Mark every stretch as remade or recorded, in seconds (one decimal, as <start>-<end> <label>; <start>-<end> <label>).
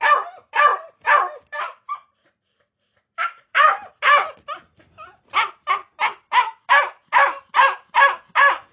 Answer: 0.0-0.7 recorded; 0.7-4.4 remade; 4.4-7.0 recorded; 7.0-7.5 remade; 7.5-8.7 recorded